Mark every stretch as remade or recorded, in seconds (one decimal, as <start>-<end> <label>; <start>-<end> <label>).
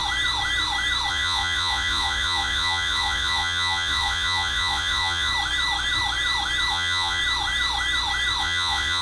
0.0-1.1 recorded; 1.1-5.3 remade; 5.3-6.7 recorded; 6.7-7.2 remade; 7.2-8.4 recorded; 8.4-9.0 remade